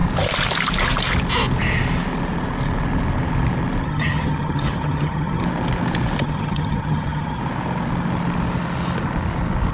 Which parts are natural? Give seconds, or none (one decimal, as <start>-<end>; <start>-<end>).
0.0-3.8; 5.4-6.2; 7.4-9.7

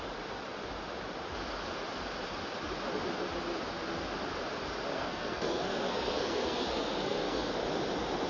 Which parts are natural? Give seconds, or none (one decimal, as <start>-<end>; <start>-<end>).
0.0-4.9; 7.5-8.3

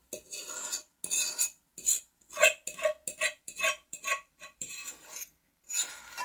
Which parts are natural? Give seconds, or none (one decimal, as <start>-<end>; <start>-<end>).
0.0-3.3

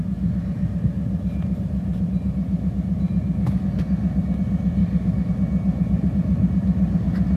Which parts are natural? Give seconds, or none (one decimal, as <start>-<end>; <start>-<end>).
0.0-4.8; 5.3-7.4

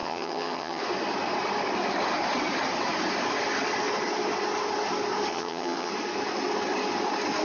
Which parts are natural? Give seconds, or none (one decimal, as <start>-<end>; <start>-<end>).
0.8-5.3; 5.9-7.4

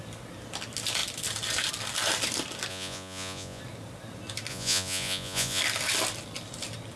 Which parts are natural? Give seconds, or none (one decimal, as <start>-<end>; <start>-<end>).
0.0-2.7; 3.6-4.5; 5.6-7.0

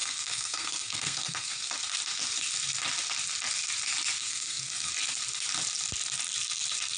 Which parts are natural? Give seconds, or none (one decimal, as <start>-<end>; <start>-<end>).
1.7-4.2; 4.9-7.0